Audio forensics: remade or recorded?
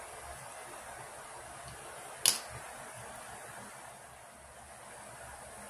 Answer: recorded